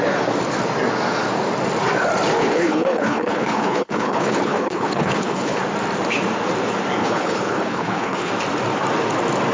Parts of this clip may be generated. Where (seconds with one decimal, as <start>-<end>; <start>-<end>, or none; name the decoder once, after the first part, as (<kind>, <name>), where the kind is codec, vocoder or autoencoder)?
2.4-5.6 (codec, HILCodec); 7.0-8.3